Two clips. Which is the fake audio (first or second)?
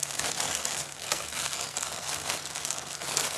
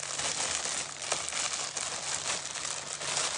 first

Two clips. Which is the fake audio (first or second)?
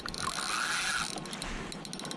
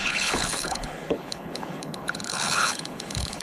second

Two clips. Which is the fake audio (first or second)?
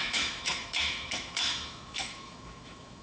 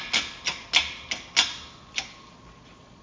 first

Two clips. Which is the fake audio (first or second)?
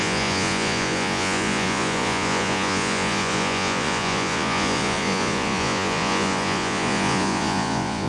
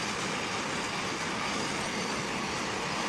first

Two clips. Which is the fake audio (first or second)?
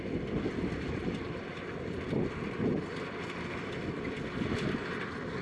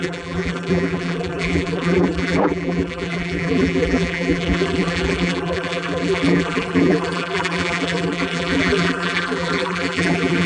second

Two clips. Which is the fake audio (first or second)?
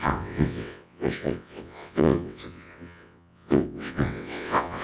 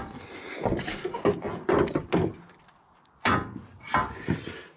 first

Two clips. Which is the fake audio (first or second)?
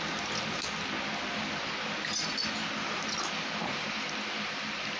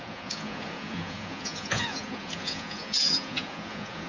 second